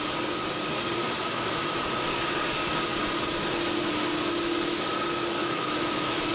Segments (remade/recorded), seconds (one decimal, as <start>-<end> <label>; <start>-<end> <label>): 0.0-1.0 recorded; 1.0-2.4 remade; 2.4-5.4 recorded; 5.4-6.3 remade